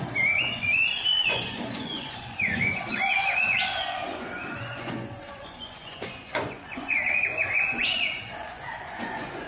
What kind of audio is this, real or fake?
fake